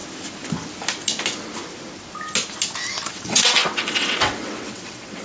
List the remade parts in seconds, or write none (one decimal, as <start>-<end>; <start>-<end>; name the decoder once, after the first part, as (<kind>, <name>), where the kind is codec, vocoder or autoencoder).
3.1-5.2 (vocoder, WaveNeXt)

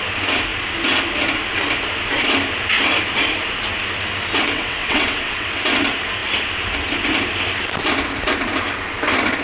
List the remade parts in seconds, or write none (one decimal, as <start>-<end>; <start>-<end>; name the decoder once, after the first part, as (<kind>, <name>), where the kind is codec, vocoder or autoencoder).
4.4-5.5 (vocoder, WaveNeXt)

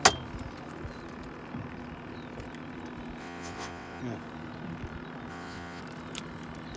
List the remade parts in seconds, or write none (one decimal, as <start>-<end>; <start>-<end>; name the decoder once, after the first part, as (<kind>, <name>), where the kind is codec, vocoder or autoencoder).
3.2-4.0 (vocoder, WaveNeXt); 5.3-5.8

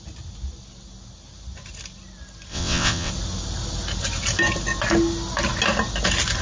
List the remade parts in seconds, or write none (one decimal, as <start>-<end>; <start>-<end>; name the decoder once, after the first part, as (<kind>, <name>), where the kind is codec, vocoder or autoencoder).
2.5-3.1 (vocoder, WaveNeXt)

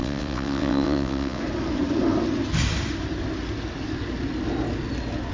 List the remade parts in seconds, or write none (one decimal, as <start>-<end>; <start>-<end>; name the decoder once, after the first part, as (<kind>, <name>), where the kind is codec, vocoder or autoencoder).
0.0-1.4 (vocoder, WaveNeXt)